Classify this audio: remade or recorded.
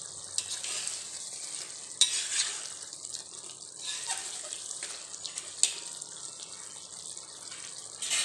recorded